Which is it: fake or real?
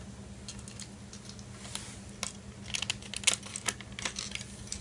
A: real